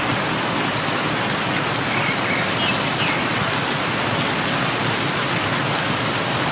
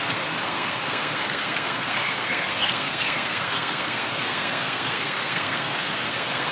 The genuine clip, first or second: first